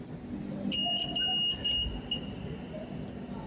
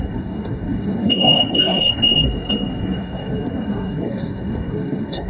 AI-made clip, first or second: second